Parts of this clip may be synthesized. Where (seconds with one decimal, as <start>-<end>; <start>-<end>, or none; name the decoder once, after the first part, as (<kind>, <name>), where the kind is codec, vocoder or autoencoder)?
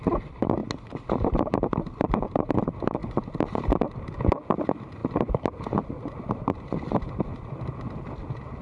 none